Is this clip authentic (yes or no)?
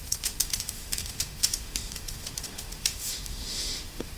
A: no